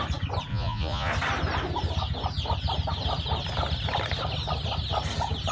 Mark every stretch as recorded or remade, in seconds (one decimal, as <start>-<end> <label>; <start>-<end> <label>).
0.0-0.5 recorded; 0.5-1.1 remade; 1.1-5.5 recorded